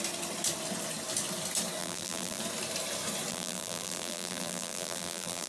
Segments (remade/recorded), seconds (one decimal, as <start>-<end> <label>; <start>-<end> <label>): 0.0-1.8 recorded; 1.8-2.4 remade; 2.4-3.3 recorded; 3.3-5.5 remade